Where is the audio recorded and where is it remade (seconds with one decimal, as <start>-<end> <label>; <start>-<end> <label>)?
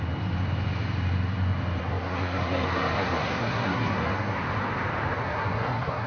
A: 0.0-1.8 recorded; 1.8-4.4 remade; 4.4-5.1 recorded; 5.1-6.1 remade